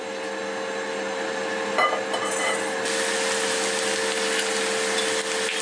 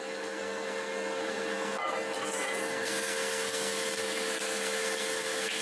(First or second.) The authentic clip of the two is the first